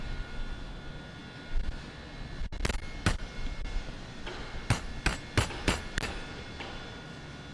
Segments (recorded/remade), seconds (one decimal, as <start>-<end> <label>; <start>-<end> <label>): 0.0-7.5 recorded